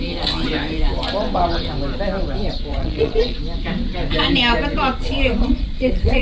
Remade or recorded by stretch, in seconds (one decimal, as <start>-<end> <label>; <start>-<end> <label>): 0.0-2.7 recorded; 2.7-3.4 remade; 3.4-5.4 recorded; 5.4-6.2 remade